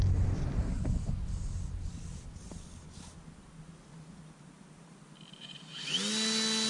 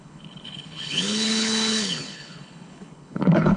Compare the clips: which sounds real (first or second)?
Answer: first